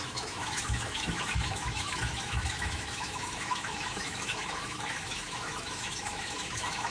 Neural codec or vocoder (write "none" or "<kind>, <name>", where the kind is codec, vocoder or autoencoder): autoencoder, DAC-VAE